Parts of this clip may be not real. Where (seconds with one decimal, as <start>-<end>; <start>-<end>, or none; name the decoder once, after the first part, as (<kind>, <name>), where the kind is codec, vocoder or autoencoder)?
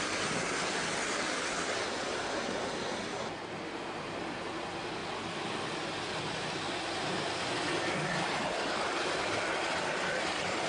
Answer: none